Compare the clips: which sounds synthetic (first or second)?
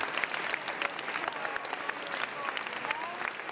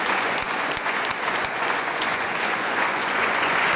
second